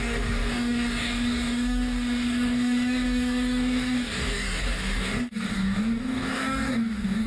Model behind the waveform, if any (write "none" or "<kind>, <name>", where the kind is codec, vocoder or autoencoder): codec, DAC